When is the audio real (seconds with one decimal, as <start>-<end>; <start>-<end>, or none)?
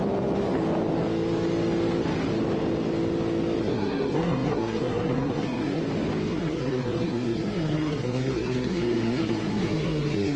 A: 0.0-3.6; 5.8-6.3